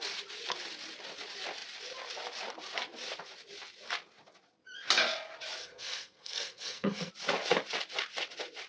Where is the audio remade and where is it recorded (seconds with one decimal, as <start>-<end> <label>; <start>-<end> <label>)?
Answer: 0.0-5.6 recorded; 5.6-7.1 remade; 7.1-8.7 recorded